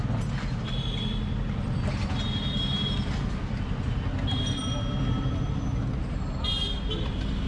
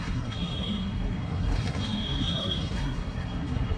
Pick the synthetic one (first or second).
second